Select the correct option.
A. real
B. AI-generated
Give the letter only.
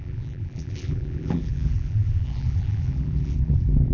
B